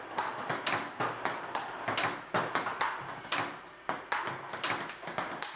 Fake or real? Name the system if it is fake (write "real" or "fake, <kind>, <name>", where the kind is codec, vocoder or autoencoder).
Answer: real